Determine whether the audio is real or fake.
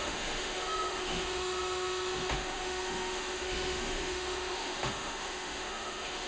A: fake